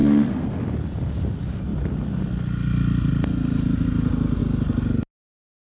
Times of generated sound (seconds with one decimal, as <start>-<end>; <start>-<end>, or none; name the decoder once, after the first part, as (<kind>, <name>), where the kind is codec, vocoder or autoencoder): 0.0-0.6 (codec, SNAC)